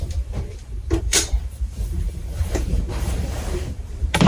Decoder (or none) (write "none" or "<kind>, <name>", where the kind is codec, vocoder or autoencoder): vocoder, BigVGAN v2